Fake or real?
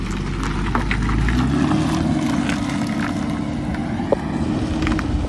real